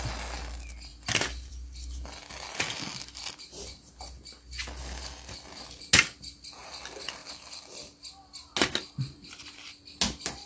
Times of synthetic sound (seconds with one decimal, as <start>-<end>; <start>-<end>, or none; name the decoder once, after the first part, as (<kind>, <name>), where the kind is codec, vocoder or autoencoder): none

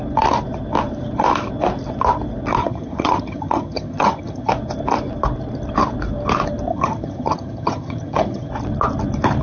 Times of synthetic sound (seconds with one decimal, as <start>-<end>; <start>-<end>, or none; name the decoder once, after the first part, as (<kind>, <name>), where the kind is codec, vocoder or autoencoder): 2.6-4.5 (vocoder, HiFi-GAN); 6.7-8.5

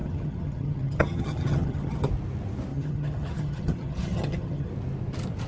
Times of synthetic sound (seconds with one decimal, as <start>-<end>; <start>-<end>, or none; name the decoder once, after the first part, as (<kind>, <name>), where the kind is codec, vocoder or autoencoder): 0.0-2.1 (vocoder, HiFi-GAN); 2.7-4.7

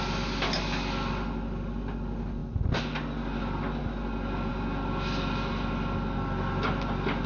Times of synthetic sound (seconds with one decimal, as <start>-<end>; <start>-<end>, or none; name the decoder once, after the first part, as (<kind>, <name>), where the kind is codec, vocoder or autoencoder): none

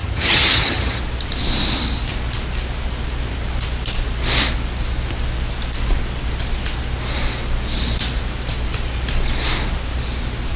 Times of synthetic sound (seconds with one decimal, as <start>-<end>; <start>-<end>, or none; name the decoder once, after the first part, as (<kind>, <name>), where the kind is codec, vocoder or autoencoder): 0.0-1.0 (vocoder, HiFi-GAN)

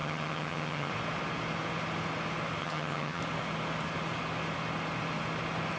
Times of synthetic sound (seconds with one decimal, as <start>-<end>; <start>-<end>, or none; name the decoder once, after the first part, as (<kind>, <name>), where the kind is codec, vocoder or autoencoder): 0.0-0.9 (vocoder, HiFi-GAN); 2.6-3.2

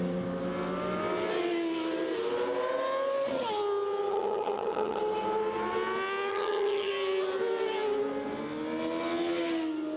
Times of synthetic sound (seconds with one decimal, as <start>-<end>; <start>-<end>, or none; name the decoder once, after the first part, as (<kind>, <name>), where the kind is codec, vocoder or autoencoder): 4.1-5.0 (vocoder, HiFi-GAN); 6.3-6.9